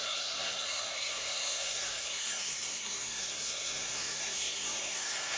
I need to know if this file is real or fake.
fake